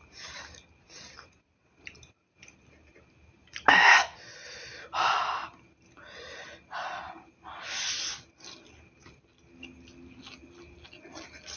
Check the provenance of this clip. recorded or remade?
recorded